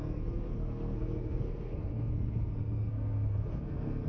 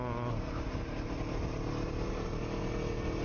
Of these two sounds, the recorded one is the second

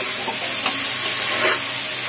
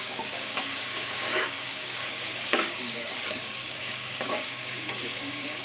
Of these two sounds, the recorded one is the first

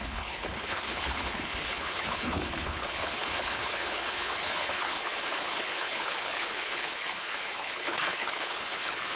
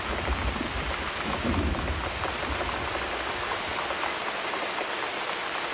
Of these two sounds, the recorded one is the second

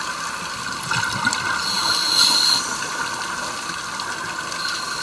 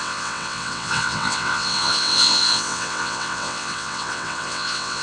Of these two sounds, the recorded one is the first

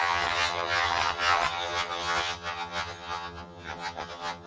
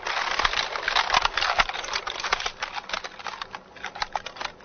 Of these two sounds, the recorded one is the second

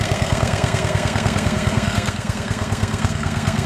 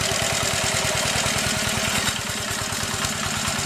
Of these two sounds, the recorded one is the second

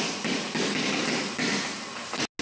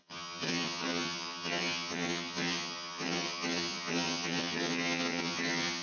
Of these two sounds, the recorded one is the first